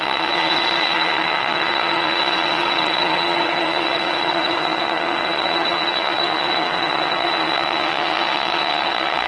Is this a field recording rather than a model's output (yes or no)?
no